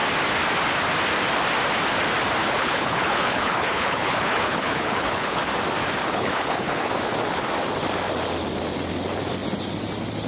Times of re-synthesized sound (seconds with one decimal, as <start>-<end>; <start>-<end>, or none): 2.4-5.4; 6.0-6.9